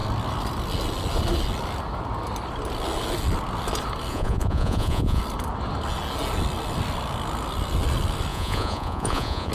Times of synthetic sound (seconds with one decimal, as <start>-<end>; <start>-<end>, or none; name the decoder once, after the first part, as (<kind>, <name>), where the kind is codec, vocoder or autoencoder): 4.1-5.2 (vocoder, Vocos); 8.3-9.5